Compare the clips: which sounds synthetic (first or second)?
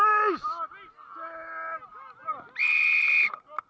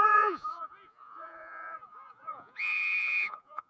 second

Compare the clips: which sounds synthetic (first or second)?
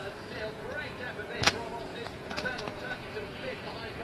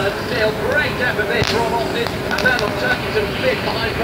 first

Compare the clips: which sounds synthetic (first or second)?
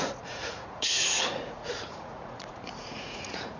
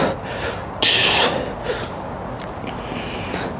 first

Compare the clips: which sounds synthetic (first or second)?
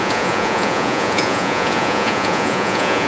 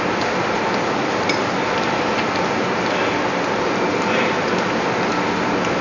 first